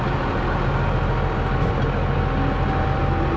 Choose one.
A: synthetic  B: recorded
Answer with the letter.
B